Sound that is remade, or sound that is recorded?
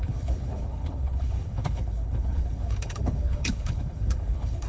remade